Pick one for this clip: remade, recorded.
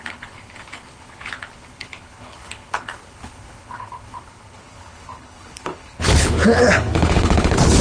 remade